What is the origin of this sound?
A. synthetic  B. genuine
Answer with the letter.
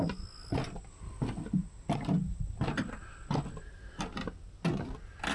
B